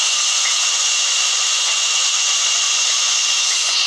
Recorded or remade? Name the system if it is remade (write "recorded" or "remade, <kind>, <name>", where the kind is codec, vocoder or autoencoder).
remade, vocoder, Vocos